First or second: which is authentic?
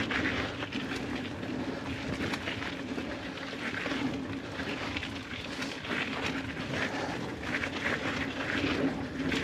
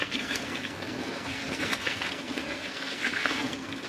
first